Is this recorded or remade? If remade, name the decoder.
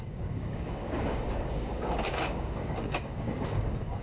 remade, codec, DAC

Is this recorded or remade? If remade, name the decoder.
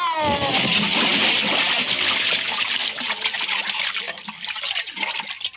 recorded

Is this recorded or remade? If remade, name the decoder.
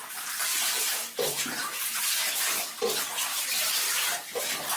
recorded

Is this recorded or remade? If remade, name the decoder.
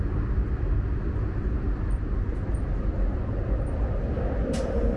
recorded